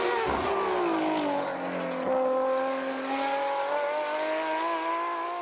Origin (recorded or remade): recorded